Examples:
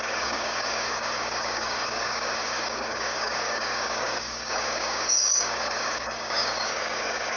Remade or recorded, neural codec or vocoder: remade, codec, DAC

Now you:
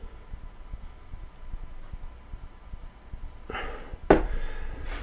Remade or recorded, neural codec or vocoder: recorded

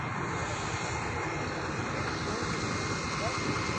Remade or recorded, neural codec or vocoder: recorded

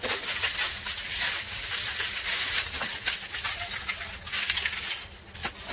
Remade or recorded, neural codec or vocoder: recorded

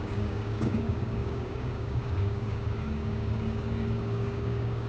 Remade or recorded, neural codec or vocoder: remade, codec, DAC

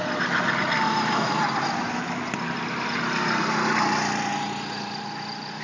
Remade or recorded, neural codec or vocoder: recorded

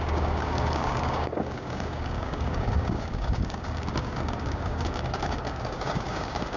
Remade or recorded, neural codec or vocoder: remade, codec, DAC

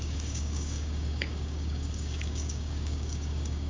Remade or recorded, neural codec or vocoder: remade, codec, DAC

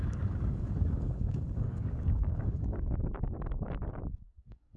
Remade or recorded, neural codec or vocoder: remade, codec, DAC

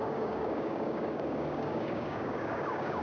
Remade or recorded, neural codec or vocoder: remade, codec, DAC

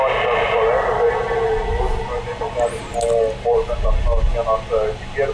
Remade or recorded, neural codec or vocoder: recorded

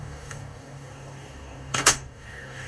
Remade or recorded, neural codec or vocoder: remade, codec, DAC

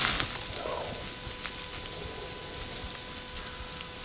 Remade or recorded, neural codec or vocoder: recorded